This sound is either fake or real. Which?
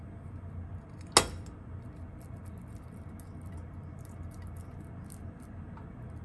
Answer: real